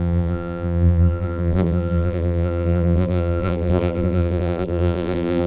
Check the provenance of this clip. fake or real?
fake